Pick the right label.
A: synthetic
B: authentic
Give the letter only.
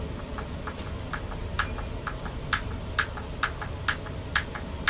B